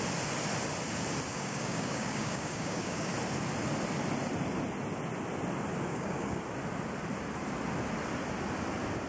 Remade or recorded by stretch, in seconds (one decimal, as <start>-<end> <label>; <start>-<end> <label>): 0.0-1.3 recorded; 1.3-3.1 remade; 3.1-5.9 recorded; 5.9-6.4 remade; 6.4-9.1 recorded